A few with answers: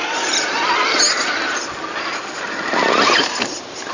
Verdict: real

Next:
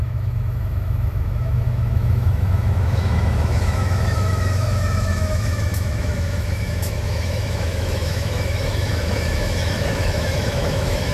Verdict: fake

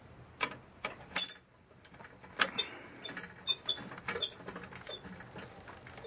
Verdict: real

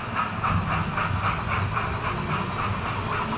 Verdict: real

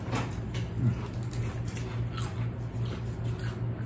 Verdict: real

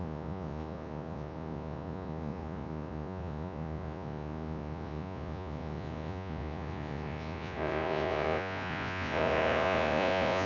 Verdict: fake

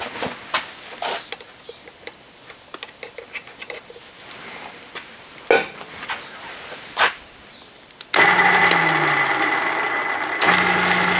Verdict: real